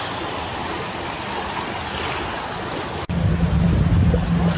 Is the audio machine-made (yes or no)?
no